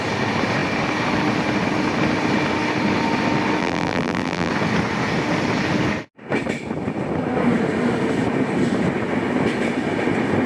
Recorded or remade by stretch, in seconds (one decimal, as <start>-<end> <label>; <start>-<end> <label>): 0.0-3.6 recorded; 3.6-4.5 remade; 4.5-10.5 recorded